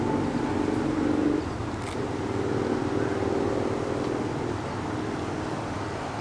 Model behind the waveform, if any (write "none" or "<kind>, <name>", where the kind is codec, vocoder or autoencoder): none